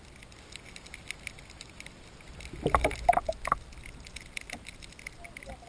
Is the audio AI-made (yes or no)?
no